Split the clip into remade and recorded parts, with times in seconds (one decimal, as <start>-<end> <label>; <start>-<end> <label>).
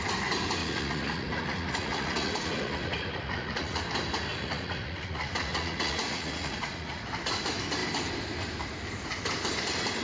0.0-0.6 recorded; 0.6-3.8 remade; 3.8-4.3 recorded; 4.3-7.0 remade; 7.0-10.0 recorded